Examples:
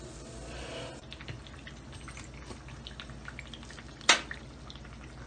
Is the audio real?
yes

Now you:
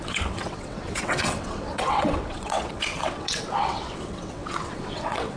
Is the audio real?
no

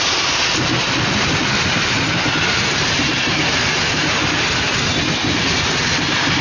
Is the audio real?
yes